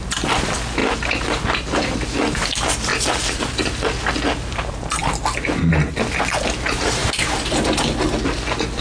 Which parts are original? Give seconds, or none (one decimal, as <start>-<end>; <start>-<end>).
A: 0.0-0.8; 1.4-2.9; 3.4-7.0; 7.6-8.8